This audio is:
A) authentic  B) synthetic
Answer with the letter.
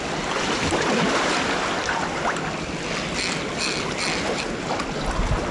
A